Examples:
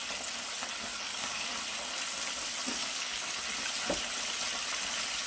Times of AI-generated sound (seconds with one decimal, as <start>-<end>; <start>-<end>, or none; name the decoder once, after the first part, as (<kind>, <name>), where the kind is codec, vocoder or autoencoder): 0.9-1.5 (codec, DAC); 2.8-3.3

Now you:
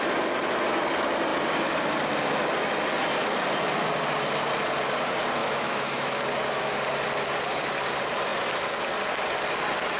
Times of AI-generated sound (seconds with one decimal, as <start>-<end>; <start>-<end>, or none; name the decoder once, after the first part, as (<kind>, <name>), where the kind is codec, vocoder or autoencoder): 5.4-6.2 (autoencoder, DAC-VAE)

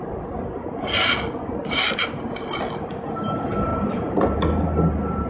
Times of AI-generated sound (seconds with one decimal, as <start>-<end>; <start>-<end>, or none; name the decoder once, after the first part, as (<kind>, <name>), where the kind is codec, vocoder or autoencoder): none

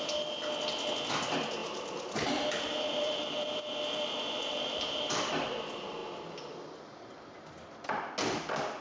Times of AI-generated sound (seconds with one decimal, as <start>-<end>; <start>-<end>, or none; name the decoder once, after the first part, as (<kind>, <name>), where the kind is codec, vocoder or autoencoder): 1.6-5.1 (vocoder, BigVGAN v2)